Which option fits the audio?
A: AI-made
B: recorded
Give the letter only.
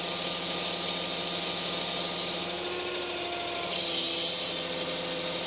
B